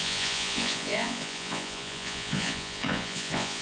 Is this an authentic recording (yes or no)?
no